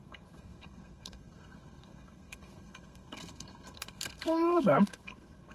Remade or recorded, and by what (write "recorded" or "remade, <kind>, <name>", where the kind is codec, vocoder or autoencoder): remade, codec, SNAC